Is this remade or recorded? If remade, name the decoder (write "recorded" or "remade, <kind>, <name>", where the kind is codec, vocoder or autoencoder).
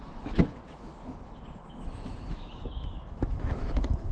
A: remade, autoencoder, DAC-VAE